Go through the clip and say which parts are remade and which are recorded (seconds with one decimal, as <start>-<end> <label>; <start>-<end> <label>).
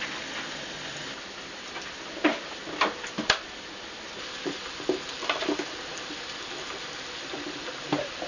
0.0-8.3 recorded